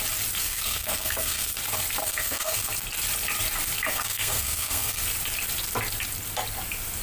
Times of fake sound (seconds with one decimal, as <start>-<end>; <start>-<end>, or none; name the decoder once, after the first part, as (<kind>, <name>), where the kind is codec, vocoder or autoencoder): 0.4-1.6 (codec, SNAC); 2.0-2.7; 3.9-5.0